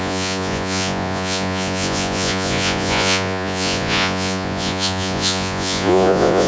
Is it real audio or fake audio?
fake